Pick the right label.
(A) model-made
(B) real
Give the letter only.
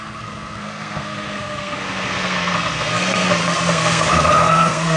A